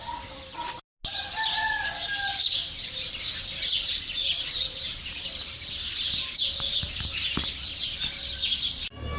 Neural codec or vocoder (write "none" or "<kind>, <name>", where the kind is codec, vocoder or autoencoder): none